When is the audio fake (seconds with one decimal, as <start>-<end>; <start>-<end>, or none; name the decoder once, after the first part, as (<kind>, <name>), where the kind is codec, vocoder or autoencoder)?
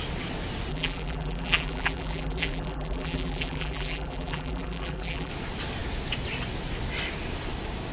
0.7-5.3 (vocoder, BigVGAN v2)